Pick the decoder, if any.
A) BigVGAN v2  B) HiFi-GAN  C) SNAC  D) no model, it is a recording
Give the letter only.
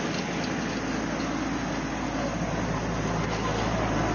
D